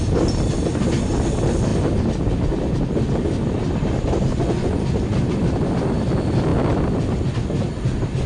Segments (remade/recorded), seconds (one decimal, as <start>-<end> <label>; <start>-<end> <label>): 0.0-4.3 recorded; 4.3-4.8 remade; 4.8-8.3 recorded